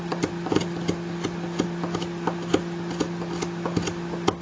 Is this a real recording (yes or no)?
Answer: yes